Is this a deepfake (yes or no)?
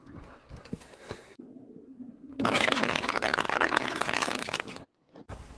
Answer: yes